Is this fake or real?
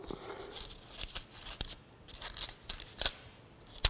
real